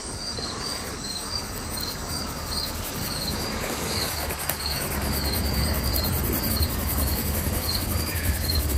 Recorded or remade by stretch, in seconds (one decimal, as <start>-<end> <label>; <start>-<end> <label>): 0.0-5.9 remade; 5.9-6.5 recorded; 6.5-8.8 remade